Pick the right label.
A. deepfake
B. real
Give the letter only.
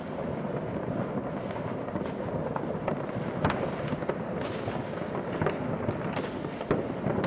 B